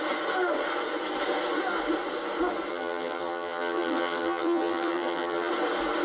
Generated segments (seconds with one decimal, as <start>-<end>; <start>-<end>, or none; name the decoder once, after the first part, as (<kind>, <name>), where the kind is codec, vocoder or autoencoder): 2.7-5.5 (vocoder, HiFi-GAN)